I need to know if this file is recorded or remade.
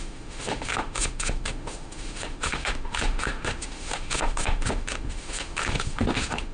remade